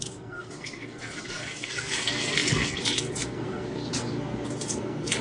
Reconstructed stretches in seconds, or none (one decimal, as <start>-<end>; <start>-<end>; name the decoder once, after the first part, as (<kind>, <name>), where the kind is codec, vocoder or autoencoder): 0.0-5.2 (codec, SNAC)